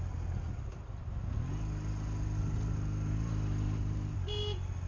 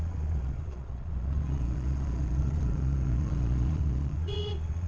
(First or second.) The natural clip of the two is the first